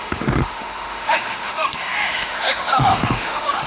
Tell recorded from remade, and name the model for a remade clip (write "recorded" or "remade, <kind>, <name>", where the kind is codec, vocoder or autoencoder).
remade, autoencoder, DAC-VAE